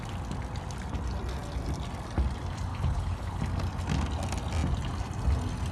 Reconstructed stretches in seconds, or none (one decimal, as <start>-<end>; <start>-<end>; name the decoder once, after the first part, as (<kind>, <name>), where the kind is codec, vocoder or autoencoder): 2.7-3.4 (codec, HILCodec)